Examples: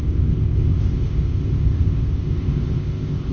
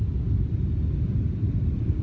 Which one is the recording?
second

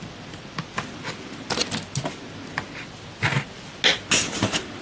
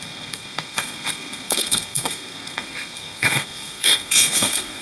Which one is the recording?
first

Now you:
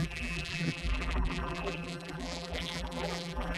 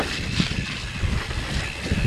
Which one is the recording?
second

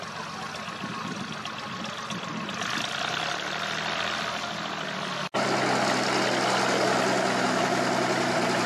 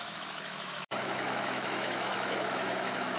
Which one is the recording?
first